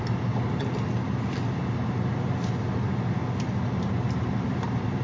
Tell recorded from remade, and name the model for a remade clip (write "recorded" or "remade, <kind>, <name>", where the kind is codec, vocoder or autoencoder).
recorded